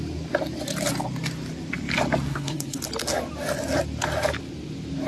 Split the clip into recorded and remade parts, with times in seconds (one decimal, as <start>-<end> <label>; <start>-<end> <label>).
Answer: 0.0-2.3 recorded; 2.3-2.8 remade; 2.8-5.1 recorded